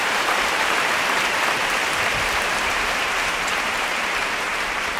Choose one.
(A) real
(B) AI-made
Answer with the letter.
B